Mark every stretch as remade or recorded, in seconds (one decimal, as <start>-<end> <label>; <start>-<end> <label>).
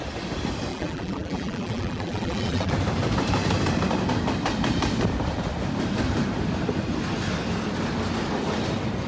0.0-0.7 recorded; 0.7-2.7 remade; 2.7-9.1 recorded